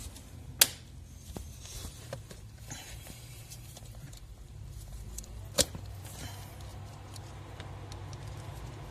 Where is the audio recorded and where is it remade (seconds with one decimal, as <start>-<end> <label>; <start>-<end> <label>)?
0.0-1.8 recorded; 1.8-6.0 remade; 6.0-6.7 recorded; 6.7-7.2 remade; 7.2-8.9 recorded